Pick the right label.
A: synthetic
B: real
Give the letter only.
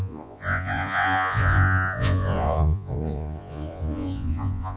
A